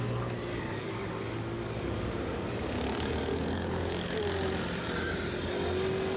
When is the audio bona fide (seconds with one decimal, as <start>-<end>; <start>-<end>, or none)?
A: 0.0-0.5; 4.2-6.2